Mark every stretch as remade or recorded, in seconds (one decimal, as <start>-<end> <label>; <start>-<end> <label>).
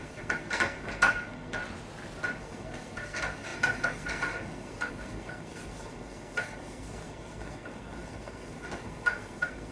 0.0-1.6 remade; 1.6-2.4 recorded; 2.4-9.7 remade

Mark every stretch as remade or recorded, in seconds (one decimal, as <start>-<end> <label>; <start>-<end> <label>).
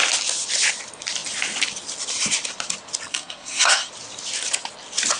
0.0-3.1 recorded; 3.1-3.9 remade; 3.9-5.2 recorded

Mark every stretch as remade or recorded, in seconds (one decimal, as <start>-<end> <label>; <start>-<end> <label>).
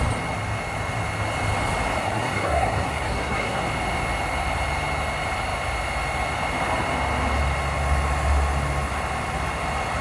0.0-2.0 recorded; 2.0-3.6 remade; 3.6-10.0 recorded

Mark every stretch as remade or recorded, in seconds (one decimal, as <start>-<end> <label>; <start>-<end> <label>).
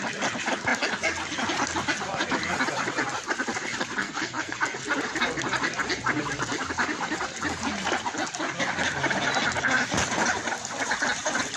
0.0-4.0 recorded; 4.0-4.6 remade; 4.6-11.6 recorded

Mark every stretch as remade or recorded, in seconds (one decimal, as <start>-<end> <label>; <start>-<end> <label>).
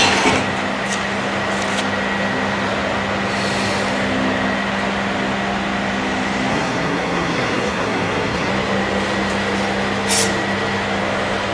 0.0-6.5 recorded; 6.5-8.5 remade; 8.5-11.5 recorded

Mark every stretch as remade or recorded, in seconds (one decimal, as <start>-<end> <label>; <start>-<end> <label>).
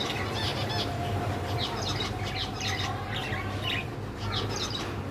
0.0-5.1 recorded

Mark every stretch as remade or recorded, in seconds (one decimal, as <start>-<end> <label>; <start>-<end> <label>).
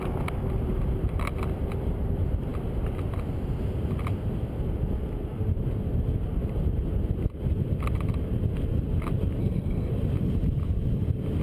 0.0-9.4 recorded; 9.4-9.9 remade; 9.9-11.4 recorded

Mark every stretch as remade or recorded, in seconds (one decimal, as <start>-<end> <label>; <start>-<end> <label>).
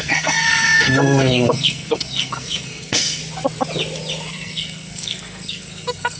0.0-3.2 remade; 3.2-4.3 recorded; 4.3-6.2 remade